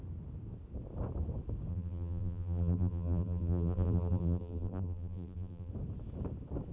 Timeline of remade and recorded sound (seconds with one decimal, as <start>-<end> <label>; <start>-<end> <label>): 0.0-1.7 recorded; 1.7-5.7 remade; 5.7-6.7 recorded